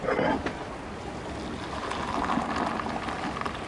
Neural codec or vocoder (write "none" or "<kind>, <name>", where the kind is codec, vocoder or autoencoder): none